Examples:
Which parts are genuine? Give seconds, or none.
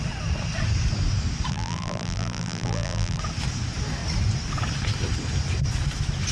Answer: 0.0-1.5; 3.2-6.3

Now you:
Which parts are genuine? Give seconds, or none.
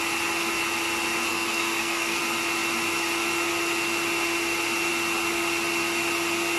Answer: 0.0-1.3; 2.2-6.6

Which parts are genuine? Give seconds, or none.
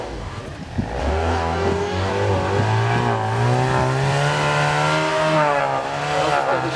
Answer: 0.4-1.0; 2.1-5.1; 5.6-6.8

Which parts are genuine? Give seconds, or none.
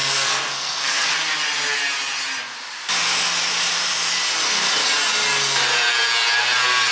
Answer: 1.1-6.9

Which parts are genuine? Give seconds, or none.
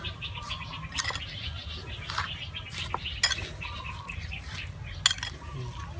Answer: 0.0-6.0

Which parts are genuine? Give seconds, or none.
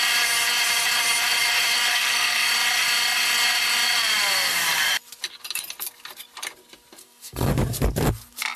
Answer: 0.0-1.9; 2.5-7.0; 7.5-8.6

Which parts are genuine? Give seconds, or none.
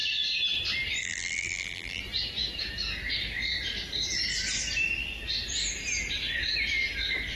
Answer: 0.0-1.0; 2.0-7.4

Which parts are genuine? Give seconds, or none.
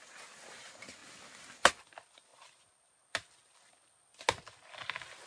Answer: 0.0-5.3